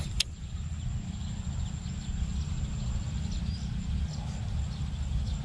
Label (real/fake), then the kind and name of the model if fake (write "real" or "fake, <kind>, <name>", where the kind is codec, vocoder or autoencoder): real